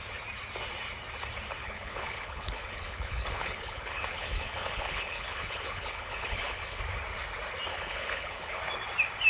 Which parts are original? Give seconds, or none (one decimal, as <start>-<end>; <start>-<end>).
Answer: 0.0-1.6; 6.8-7.7; 8.6-9.3